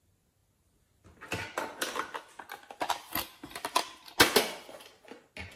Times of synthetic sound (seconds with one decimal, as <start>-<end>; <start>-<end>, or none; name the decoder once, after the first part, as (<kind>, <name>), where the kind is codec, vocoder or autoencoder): none

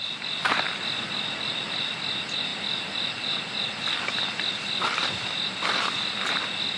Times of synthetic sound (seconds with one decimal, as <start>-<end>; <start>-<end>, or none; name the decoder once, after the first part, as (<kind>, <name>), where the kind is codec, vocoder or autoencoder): none

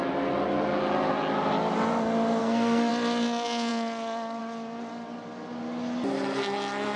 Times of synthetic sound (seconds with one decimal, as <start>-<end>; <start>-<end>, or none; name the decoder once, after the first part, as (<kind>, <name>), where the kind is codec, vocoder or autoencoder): 2.4-2.9 (codec, SNAC)

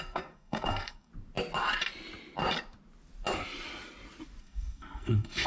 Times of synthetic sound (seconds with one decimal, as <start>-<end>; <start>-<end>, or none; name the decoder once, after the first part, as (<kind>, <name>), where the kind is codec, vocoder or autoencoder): 0.0-1.1 (codec, SNAC); 4.4-5.5

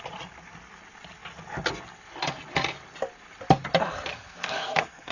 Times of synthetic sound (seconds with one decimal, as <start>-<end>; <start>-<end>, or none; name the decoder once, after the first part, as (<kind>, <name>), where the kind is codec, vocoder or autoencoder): 4.1-5.1 (codec, SNAC)

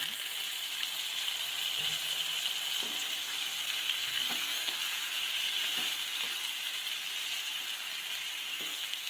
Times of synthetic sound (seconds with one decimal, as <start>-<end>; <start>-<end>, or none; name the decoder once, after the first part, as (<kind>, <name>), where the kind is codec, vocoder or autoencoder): 3.6-4.7 (codec, SNAC); 8.5-9.1

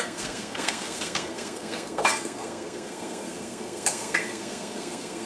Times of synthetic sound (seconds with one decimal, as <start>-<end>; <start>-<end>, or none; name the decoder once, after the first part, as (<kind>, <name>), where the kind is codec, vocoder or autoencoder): 0.0-5.3 (codec, SNAC)